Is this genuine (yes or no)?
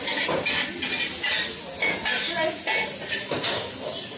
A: yes